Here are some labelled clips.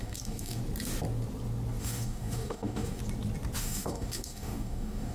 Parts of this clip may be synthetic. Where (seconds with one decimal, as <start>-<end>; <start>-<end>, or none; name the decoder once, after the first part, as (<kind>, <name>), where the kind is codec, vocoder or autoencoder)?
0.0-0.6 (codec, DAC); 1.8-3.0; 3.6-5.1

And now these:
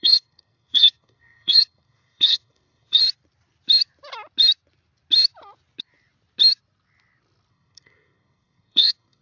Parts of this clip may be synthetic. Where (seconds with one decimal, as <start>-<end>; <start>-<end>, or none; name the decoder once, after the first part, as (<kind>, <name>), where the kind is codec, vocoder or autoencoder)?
0.0-3.0 (codec, SNAC); 7.5-9.2

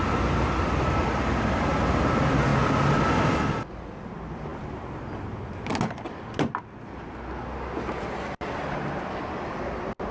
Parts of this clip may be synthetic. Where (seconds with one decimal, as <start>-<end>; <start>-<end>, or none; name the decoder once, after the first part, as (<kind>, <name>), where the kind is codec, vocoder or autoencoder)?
none

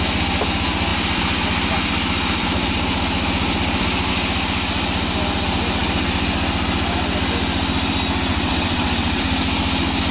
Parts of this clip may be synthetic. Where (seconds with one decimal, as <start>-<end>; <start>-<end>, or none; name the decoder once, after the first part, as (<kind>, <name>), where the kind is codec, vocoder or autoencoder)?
8.3-9.2 (vocoder, WaveNeXt)

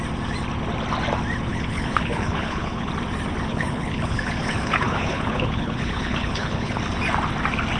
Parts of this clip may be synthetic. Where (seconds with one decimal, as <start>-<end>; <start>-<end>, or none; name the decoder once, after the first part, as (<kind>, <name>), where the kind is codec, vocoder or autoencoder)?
1.5-2.9 (codec, HILCodec); 3.5-6.8

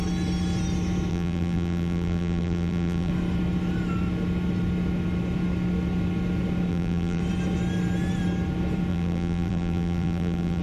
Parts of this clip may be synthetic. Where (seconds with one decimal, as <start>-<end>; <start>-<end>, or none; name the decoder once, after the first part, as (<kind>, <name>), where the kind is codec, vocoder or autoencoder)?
1.1-3.1 (vocoder, BigVGAN v2); 6.7-7.2; 8.9-10.6

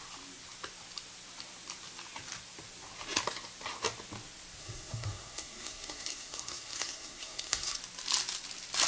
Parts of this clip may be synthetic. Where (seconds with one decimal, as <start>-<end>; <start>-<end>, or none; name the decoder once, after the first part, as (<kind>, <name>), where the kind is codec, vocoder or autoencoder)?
4.6-7.8 (codec, SNAC)

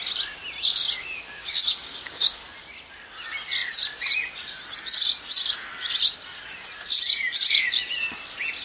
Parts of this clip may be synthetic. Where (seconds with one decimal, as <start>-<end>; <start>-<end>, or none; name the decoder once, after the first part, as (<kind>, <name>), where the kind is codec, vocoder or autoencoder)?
1.0-2.4 (codec, DAC)